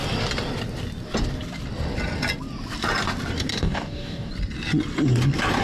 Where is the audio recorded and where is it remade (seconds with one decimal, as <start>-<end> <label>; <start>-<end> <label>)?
0.0-3.5 recorded; 3.5-4.3 remade; 4.3-5.6 recorded